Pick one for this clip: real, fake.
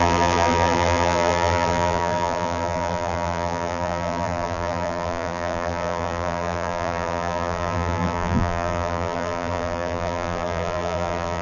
fake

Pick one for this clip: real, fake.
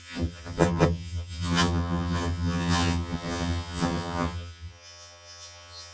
fake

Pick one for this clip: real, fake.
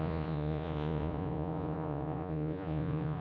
fake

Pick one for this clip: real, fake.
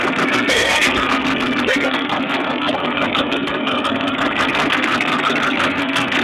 fake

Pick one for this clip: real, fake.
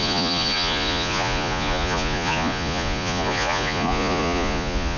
fake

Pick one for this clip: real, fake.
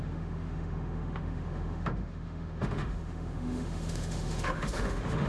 fake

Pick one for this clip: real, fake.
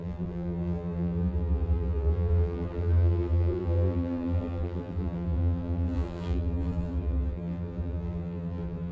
fake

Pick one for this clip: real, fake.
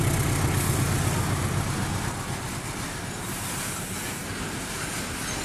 real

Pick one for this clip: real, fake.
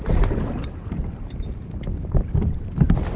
real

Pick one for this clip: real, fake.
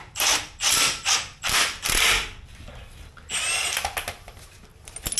real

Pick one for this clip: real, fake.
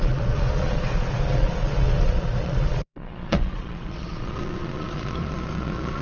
fake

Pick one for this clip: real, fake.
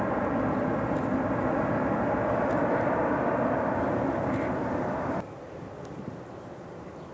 real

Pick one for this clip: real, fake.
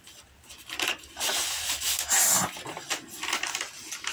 real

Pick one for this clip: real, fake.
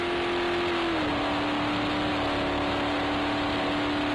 real